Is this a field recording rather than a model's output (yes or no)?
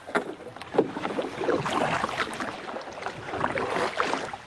yes